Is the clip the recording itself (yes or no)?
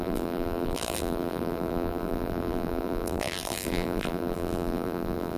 no